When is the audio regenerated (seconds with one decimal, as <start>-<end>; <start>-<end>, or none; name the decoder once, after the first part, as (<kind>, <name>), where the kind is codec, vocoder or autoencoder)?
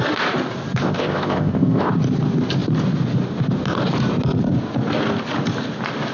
0.8-1.9 (codec, ZipCodec)